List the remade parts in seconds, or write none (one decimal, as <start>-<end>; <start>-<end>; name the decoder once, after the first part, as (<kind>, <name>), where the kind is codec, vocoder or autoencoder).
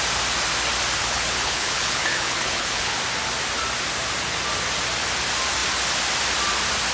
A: 1.0-3.0 (codec, HILCodec)